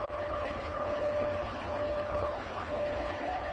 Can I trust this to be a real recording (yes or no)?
no